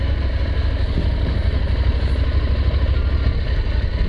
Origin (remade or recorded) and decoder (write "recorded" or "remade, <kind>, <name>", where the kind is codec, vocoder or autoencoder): recorded